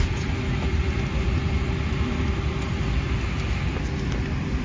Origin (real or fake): real